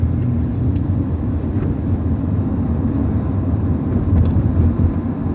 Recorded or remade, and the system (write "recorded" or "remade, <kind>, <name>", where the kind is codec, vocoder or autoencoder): recorded